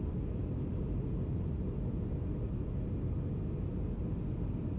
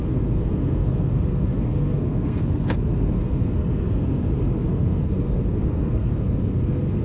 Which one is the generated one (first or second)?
second